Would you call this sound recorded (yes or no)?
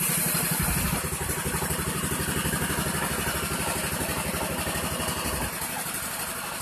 yes